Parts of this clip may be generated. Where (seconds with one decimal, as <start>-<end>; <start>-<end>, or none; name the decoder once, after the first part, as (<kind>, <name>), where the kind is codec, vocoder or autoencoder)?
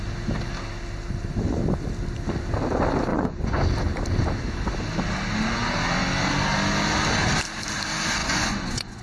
3.1-3.6 (vocoder, Vocos); 8.2-9.0